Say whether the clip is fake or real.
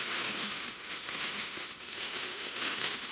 fake